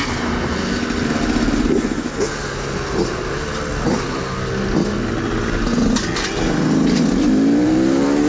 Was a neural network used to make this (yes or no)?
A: no